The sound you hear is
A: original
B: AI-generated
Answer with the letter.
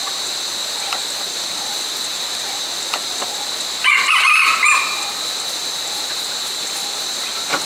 A